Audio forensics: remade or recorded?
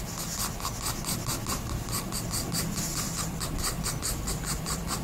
recorded